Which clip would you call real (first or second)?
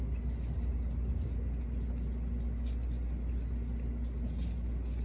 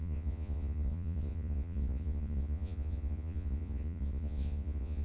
first